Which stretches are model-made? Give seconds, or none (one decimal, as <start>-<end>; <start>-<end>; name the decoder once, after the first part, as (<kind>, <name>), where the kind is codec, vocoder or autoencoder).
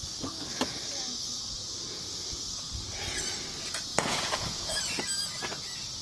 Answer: 3.9-4.8 (vocoder, Vocos)